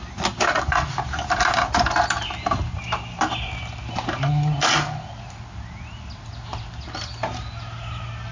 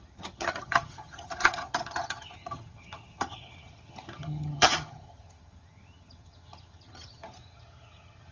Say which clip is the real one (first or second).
first